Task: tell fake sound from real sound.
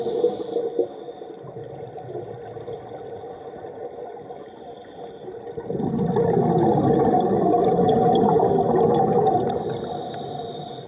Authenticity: real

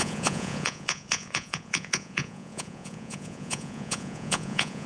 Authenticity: fake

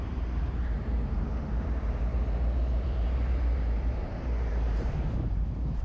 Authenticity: fake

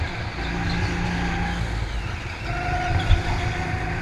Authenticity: real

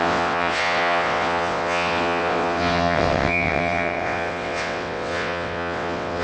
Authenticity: fake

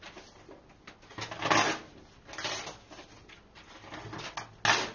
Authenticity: real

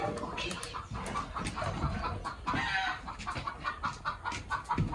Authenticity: real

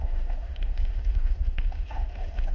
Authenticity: fake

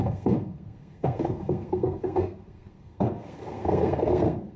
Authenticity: fake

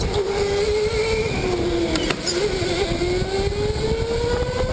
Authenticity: real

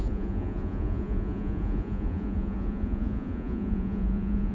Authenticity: fake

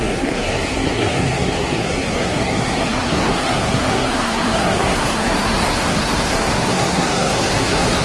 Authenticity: fake